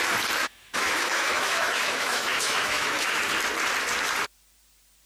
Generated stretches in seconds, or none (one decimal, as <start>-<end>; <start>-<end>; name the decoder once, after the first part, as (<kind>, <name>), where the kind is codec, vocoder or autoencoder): 0.4-3.2 (autoencoder, DAC-VAE)